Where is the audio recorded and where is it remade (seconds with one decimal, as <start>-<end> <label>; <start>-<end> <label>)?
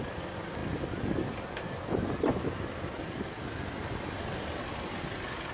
0.0-5.5 recorded